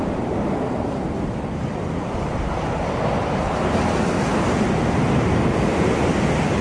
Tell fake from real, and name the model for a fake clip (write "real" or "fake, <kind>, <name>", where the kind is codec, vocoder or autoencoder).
real